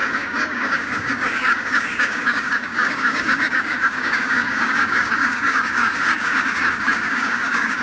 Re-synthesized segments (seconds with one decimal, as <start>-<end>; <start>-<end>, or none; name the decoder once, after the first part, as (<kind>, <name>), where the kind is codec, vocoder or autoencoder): 0.0-7.8 (codec, DAC)